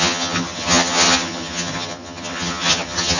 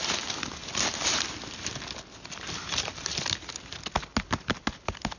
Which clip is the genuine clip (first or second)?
second